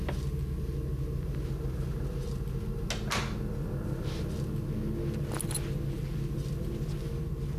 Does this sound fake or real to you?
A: real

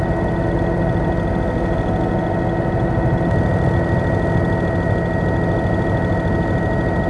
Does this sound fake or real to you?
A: real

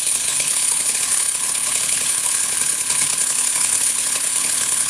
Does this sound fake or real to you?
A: fake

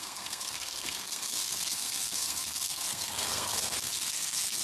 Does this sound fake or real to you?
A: fake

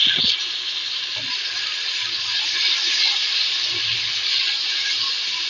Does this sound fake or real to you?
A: real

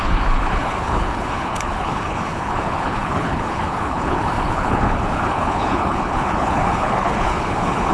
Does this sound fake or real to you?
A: fake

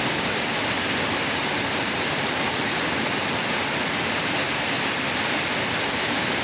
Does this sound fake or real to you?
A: real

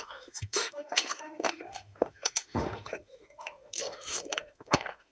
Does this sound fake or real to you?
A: fake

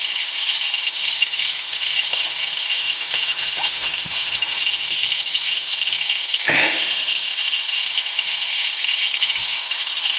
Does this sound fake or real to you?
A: fake